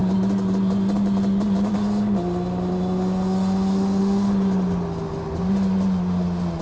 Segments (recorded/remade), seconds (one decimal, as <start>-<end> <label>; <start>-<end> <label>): 0.0-6.6 recorded